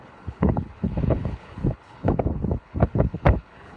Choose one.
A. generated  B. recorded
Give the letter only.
A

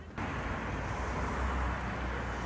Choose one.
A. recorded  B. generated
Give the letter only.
A